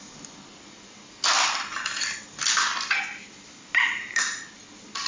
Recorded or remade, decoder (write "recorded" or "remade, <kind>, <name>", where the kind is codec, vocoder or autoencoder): recorded